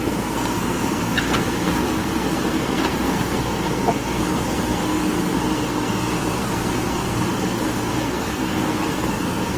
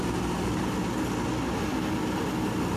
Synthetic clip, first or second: first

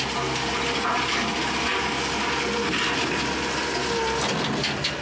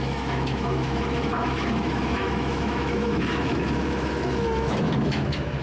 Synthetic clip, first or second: second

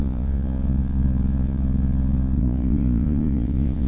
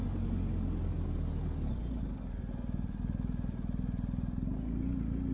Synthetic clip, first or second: first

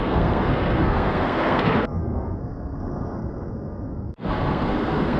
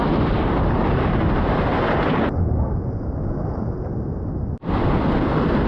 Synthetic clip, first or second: first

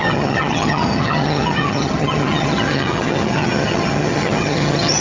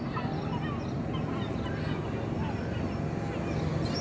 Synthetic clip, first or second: first